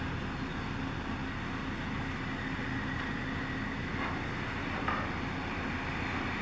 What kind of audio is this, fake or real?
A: real